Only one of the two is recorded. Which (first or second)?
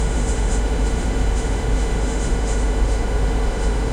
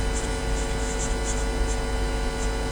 second